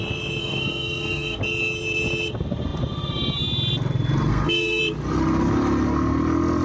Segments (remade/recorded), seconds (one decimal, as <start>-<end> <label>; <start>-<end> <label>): 0.0-0.4 recorded; 0.4-1.4 remade; 1.4-4.3 recorded; 4.3-4.8 remade; 4.8-6.6 recorded

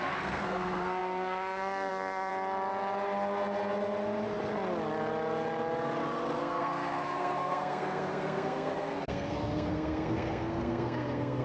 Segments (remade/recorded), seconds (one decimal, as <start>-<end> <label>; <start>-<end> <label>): 0.0-2.3 remade; 2.3-6.4 recorded; 6.4-11.4 remade

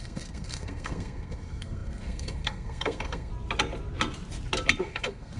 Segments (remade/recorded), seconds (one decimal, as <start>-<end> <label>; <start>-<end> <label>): 0.0-3.3 remade; 3.3-4.8 recorded; 4.8-5.4 remade

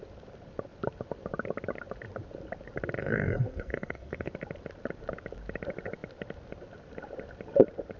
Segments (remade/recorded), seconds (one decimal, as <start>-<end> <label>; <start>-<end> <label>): 0.0-3.0 recorded; 3.0-4.3 remade; 4.3-8.0 recorded

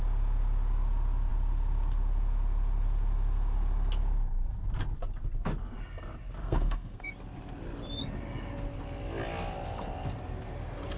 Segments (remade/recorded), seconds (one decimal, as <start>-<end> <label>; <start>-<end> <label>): 0.0-6.4 recorded; 6.4-7.1 remade; 7.1-11.0 recorded